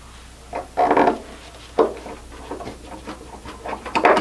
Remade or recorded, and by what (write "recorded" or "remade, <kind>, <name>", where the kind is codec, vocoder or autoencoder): recorded